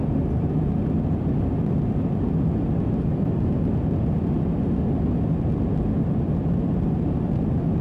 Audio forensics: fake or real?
real